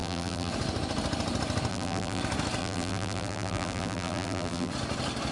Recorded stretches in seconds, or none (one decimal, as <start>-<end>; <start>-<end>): 0.5-1.7; 2.2-2.6; 4.7-5.3